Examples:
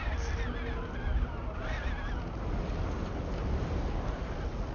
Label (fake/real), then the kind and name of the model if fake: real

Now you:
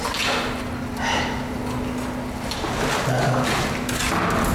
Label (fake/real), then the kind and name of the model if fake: real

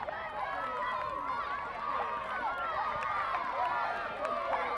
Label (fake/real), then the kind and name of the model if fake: real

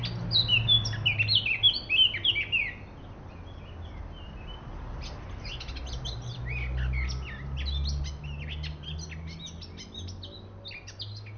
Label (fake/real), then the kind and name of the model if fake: real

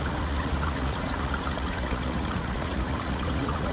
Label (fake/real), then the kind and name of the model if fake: fake, vocoder, Vocos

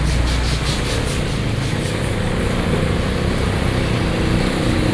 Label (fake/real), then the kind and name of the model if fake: real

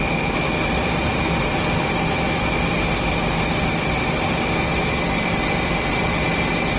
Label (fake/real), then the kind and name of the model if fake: real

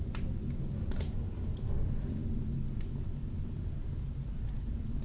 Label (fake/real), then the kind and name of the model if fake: real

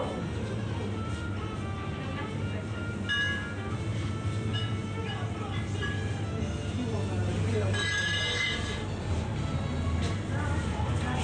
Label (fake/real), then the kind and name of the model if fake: real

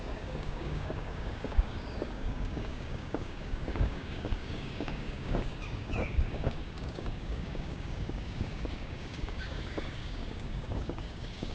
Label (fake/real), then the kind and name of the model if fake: fake, codec, DAC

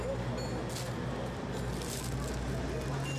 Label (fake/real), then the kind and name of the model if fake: real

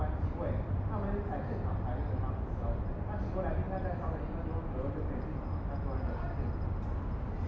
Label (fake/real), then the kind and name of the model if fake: real